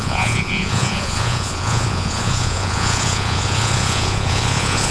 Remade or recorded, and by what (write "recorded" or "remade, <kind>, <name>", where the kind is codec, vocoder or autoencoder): remade, vocoder, Vocos